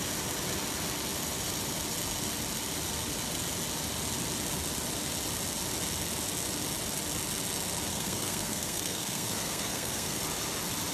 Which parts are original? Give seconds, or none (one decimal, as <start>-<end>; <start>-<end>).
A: 0.0-7.9; 10.2-10.9